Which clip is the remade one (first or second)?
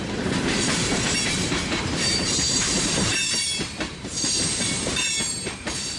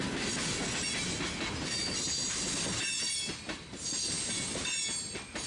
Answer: first